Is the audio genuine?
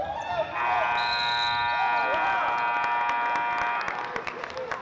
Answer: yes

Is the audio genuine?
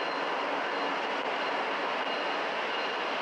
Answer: yes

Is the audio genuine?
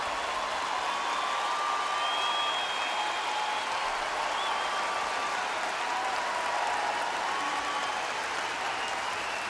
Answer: yes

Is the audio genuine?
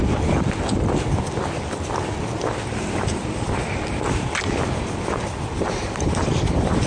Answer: yes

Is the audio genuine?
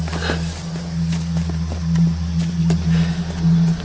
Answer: yes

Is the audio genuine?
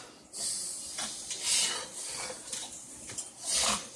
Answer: yes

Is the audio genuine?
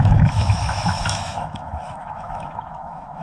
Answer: no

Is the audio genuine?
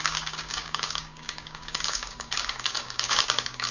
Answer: no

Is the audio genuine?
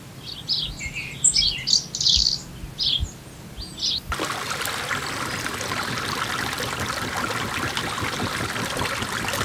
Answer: yes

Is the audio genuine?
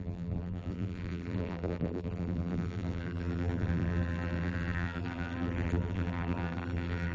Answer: no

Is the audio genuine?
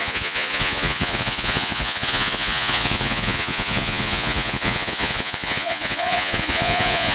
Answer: no